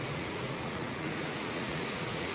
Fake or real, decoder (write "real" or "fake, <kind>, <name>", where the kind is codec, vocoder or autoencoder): fake, vocoder, Vocos